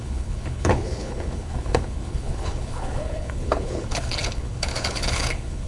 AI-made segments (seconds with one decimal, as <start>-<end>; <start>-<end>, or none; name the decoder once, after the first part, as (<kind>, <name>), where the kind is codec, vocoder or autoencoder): 0.0-5.7 (codec, HILCodec)